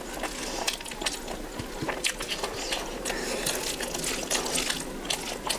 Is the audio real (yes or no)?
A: yes